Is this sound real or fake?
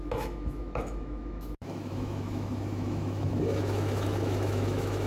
fake